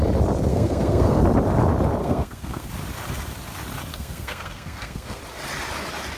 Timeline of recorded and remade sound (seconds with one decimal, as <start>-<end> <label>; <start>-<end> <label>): 0.0-0.5 recorded; 0.5-1.2 remade; 1.2-2.0 recorded; 2.0-2.7 remade; 2.7-3.9 recorded; 3.9-5.2 remade; 5.2-6.2 recorded